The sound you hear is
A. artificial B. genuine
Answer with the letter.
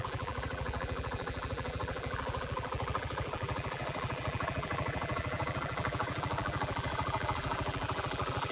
A